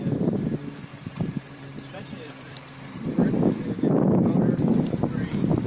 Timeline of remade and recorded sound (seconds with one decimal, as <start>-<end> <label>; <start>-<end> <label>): 0.0-0.9 recorded; 0.9-3.3 remade; 3.3-4.2 recorded; 4.2-5.3 remade; 5.3-5.7 recorded